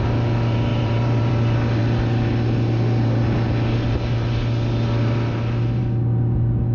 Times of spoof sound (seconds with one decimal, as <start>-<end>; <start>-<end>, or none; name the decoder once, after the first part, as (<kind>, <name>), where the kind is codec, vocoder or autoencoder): 0.7-1.3 (vocoder, BigVGAN v2)